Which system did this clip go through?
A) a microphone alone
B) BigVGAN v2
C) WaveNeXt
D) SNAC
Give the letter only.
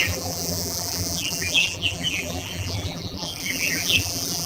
B